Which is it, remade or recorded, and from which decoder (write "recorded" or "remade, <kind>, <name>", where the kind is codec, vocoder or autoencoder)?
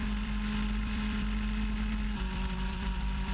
remade, vocoder, BigVGAN v2